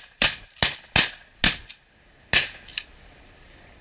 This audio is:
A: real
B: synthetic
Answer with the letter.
A